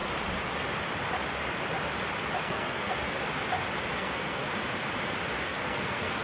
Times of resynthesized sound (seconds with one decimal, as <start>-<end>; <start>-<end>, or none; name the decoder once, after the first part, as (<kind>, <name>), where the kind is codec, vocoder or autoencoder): 2.4-3.0 (codec, SNAC); 3.9-4.5; 5.4-6.2